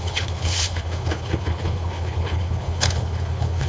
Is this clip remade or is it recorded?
remade